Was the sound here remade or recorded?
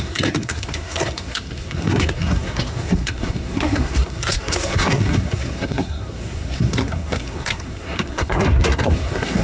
remade